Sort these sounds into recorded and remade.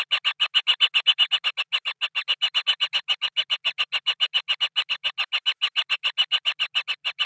recorded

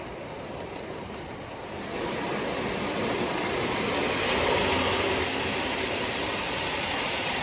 remade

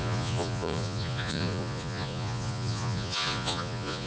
remade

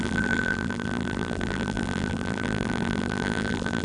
remade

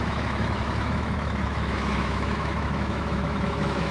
remade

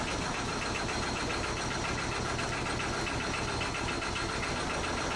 recorded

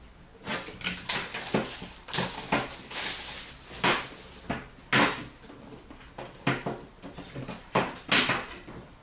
recorded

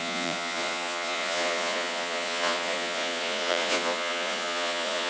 remade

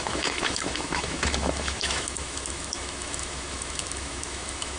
remade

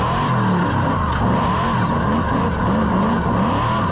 recorded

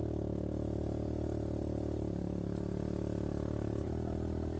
recorded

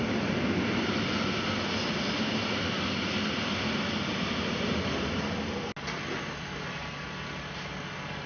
recorded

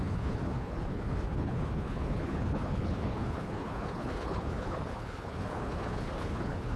remade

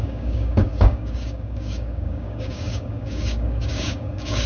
remade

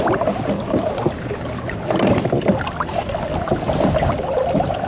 recorded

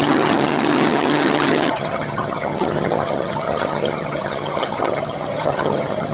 remade